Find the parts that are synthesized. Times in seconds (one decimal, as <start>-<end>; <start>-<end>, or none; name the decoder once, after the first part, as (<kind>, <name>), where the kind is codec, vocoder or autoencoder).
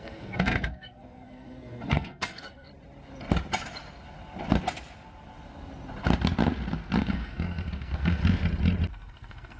0.0-2.7 (codec, SNAC); 7.0-8.2; 8.9-9.6